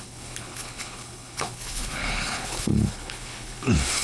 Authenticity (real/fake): fake